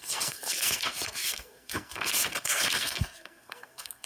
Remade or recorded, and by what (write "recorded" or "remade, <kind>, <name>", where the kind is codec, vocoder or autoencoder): remade, codec, SNAC